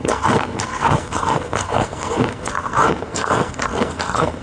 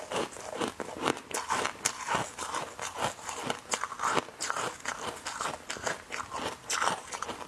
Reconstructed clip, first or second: first